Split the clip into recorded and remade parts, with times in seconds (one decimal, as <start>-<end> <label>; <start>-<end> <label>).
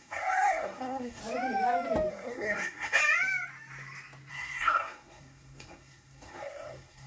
0.0-1.2 remade; 1.2-2.1 recorded; 2.1-3.0 remade; 3.0-4.3 recorded; 4.3-7.1 remade